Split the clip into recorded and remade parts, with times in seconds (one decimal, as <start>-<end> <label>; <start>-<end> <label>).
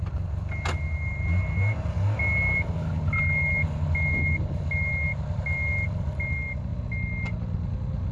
0.0-8.1 recorded